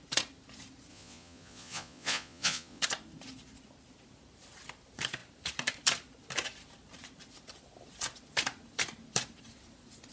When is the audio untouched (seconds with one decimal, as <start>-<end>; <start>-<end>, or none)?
0.0-0.9; 2.8-10.1